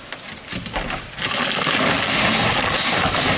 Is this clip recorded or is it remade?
recorded